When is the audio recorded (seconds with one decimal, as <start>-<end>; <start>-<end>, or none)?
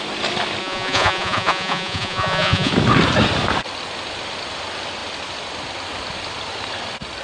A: 0.0-0.6; 2.7-7.2